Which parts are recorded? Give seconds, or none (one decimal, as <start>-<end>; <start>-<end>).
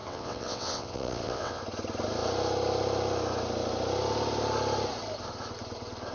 1.6-6.1